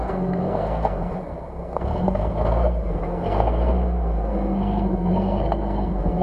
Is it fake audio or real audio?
fake